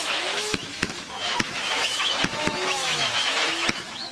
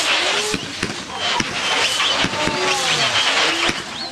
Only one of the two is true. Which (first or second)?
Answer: second